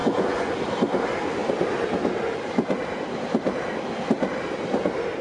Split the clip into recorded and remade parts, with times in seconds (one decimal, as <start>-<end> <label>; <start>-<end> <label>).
0.0-0.5 remade; 0.5-5.2 recorded

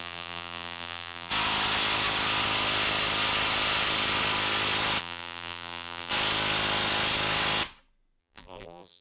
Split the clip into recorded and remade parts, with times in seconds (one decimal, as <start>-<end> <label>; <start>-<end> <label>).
0.0-1.3 remade; 1.3-5.0 recorded; 5.0-6.1 remade; 6.1-8.2 recorded; 8.2-9.0 remade